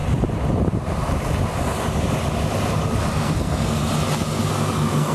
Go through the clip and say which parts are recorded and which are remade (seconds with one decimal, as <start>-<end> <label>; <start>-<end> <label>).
0.0-3.1 recorded; 3.1-3.8 remade; 3.8-4.5 recorded; 4.5-5.1 remade